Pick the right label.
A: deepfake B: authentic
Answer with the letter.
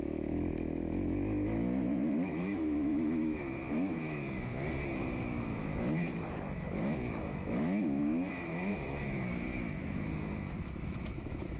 A